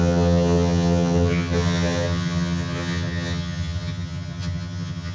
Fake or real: fake